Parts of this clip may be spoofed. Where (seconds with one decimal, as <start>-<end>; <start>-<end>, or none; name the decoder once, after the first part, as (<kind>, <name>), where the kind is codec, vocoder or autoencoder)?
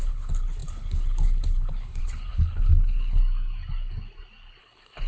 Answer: 0.0-3.2 (codec, HILCodec); 4.6-5.1